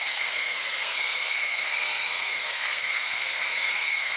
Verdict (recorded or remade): remade